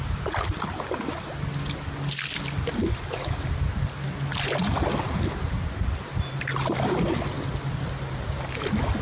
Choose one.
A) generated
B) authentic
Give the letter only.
B